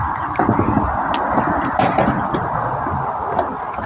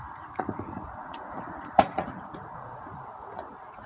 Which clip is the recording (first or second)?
first